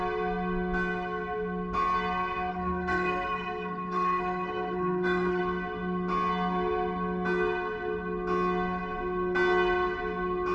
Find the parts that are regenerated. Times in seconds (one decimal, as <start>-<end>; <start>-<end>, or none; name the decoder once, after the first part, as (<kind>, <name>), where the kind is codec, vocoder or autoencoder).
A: 2.5-5.4 (codec, SNAC)